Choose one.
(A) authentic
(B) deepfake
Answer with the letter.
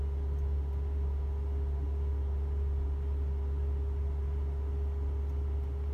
A